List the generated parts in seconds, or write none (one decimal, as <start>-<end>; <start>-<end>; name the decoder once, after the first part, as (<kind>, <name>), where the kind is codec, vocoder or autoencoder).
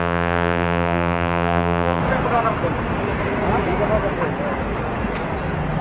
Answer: 0.0-2.0 (vocoder, BigVGAN v2)